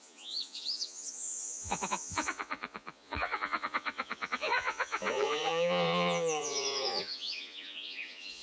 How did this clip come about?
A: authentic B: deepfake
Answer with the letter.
B